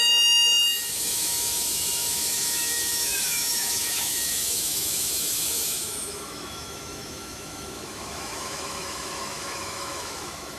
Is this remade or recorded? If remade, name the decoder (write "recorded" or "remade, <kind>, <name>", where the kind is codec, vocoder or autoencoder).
remade, autoencoder, DAC-VAE